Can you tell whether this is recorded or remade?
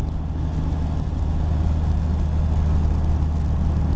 recorded